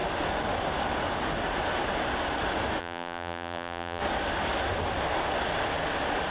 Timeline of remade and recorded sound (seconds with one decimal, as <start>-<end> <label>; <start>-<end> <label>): 0.0-2.8 recorded; 2.8-4.0 remade; 4.0-6.3 recorded